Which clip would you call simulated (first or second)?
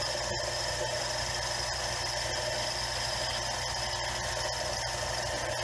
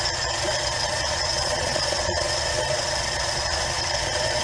second